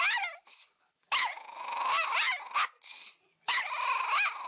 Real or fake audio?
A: real